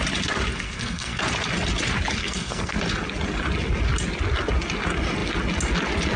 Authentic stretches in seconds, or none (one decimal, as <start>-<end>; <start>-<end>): 0.0-0.5; 1.2-2.2; 2.7-6.2

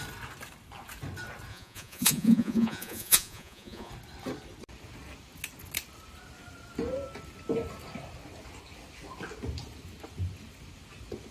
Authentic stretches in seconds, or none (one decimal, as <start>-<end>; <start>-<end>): 0.0-1.5; 3.9-11.3

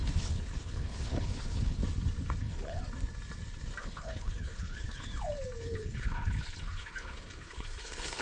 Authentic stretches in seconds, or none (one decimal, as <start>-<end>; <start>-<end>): 1.8-2.4; 2.8-3.8; 5.1-5.6

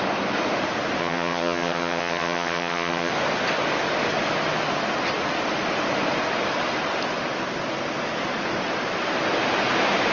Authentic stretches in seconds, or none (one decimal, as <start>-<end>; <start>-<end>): 0.0-1.0; 3.1-10.1